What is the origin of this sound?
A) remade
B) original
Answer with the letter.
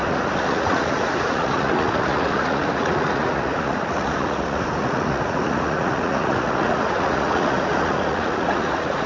A